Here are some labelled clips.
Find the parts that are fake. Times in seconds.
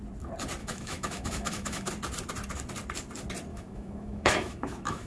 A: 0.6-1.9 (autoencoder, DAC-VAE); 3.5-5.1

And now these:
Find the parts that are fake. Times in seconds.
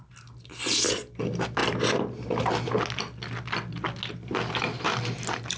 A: none